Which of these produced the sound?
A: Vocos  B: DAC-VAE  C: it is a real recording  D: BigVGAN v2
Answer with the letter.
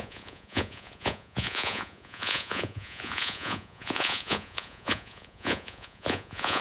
A